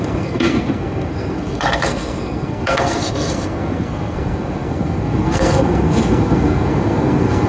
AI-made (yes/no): yes